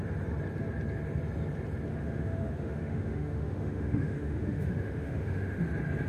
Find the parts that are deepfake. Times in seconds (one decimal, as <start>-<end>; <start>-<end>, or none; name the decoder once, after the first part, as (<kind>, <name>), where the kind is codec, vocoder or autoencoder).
1.9-5.6 (autoencoder, DAC-VAE)